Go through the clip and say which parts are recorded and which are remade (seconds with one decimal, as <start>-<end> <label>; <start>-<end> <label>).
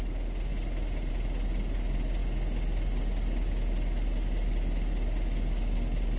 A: 0.0-6.2 recorded